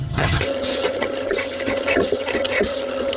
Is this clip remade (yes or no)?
yes